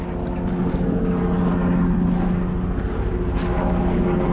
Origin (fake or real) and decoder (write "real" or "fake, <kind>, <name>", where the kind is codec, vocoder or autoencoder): real